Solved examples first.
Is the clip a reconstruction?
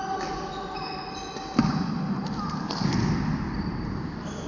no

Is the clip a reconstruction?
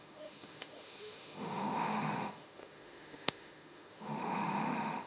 yes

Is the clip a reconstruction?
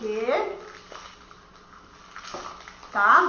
no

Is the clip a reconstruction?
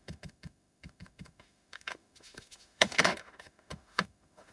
yes